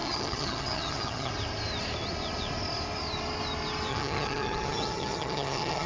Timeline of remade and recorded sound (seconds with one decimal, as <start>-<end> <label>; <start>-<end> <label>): 0.0-1.3 remade; 1.3-3.9 recorded; 3.9-5.9 remade